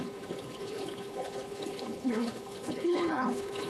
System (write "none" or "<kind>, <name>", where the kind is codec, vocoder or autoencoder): codec, HILCodec